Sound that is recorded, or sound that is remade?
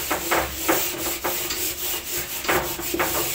recorded